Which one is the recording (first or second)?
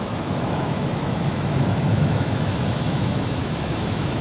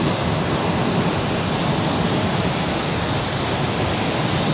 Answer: second